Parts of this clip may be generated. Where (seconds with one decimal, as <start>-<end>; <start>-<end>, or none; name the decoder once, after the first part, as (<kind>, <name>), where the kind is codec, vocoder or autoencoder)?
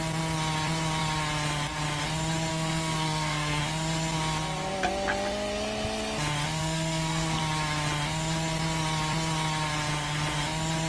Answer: 2.5-3.6 (codec, SNAC); 6.6-7.4